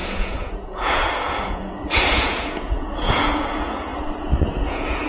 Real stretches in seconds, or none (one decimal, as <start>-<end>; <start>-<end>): 3.9-4.6